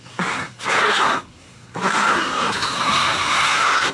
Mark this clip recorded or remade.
remade